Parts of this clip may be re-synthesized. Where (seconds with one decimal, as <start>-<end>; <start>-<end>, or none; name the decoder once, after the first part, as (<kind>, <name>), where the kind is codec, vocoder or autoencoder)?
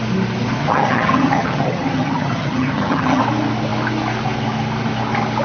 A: 0.6-3.2 (vocoder, HiFi-GAN)